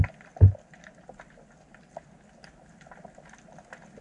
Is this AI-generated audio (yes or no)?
no